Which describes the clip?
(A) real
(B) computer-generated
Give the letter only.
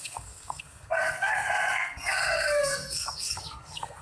B